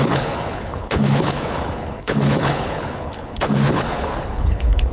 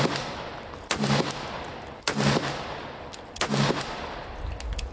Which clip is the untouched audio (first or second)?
second